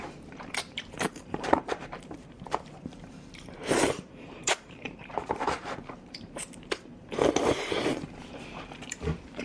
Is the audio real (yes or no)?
no